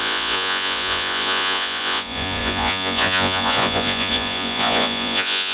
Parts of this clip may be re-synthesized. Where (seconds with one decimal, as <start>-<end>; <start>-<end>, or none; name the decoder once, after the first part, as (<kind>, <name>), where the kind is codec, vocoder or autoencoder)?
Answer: 0.0-5.5 (vocoder, Vocos)